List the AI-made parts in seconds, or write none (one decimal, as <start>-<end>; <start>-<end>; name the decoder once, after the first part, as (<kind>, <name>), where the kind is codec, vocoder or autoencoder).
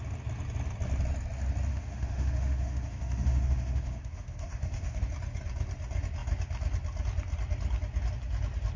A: 1.7-5.0 (autoencoder, DAC-VAE)